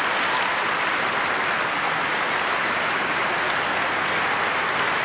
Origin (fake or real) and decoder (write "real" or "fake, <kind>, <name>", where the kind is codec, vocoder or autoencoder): real